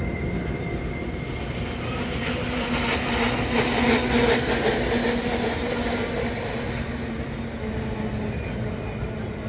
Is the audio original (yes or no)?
yes